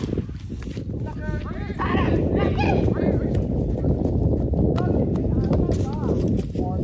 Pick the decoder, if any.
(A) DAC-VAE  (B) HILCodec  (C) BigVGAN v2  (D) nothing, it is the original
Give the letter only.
D